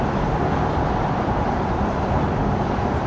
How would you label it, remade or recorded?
remade